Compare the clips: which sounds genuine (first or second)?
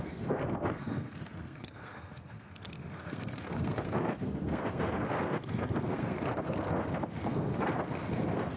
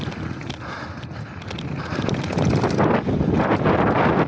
second